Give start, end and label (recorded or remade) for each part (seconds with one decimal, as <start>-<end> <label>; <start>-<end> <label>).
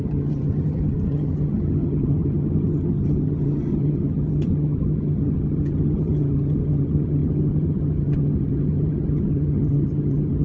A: 0.0-10.4 remade